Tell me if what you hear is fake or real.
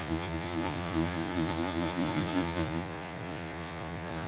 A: fake